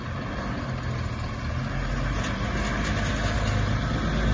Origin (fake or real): real